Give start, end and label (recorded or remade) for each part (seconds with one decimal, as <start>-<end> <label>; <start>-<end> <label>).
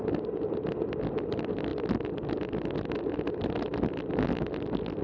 0.0-5.0 recorded